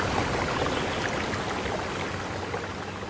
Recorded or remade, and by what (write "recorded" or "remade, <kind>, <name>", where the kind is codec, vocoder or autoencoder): recorded